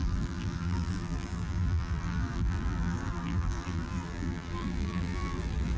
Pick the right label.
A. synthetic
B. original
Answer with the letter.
A